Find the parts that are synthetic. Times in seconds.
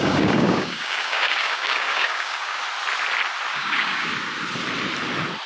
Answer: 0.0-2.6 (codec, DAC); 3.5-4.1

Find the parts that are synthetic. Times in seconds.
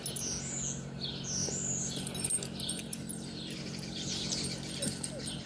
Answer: 1.4-4.7 (vocoder, BigVGAN v2)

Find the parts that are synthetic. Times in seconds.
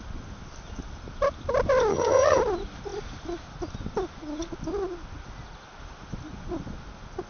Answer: 1.9-2.4 (vocoder, HiFi-GAN)